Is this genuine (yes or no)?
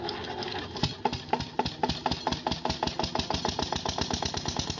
yes